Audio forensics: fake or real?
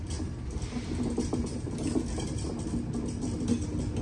real